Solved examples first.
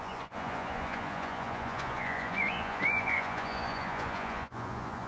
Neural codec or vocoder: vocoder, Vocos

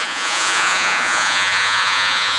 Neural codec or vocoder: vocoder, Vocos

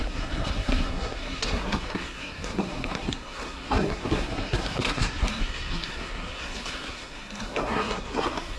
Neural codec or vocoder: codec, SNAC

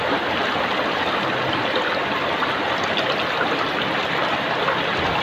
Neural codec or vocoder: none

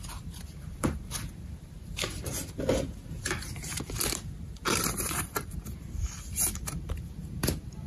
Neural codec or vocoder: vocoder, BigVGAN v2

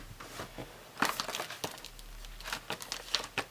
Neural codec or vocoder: none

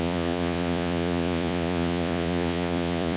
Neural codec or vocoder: vocoder, Vocos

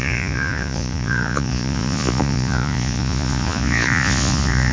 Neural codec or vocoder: vocoder, Vocos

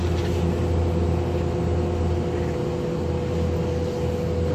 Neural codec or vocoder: none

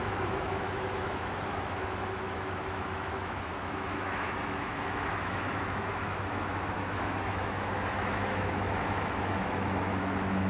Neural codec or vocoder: autoencoder, DAC-VAE